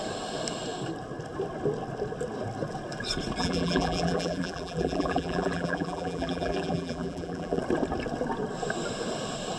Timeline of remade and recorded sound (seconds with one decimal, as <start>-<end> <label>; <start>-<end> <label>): 0.0-3.4 recorded; 3.4-7.6 remade; 7.6-9.6 recorded

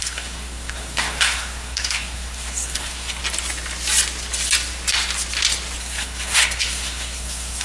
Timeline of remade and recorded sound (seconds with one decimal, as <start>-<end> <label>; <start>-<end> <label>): 0.0-3.2 remade; 3.2-5.8 recorded; 5.8-7.6 remade

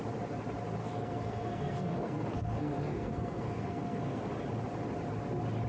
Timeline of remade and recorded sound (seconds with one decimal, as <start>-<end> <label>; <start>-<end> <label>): 0.0-0.8 recorded; 0.8-4.2 remade; 4.2-5.7 recorded

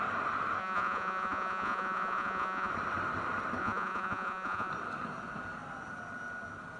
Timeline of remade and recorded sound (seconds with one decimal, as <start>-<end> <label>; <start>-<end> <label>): 0.0-0.6 recorded; 0.6-2.7 remade; 2.7-3.6 recorded; 3.6-4.7 remade; 4.7-6.8 recorded